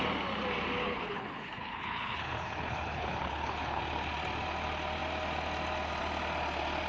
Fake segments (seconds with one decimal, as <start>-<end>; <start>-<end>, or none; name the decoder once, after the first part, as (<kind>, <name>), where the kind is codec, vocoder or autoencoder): 0.8-3.8 (codec, HILCodec)